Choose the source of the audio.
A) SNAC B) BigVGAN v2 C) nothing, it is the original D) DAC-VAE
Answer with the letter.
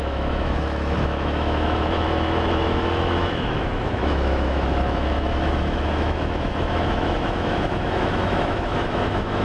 D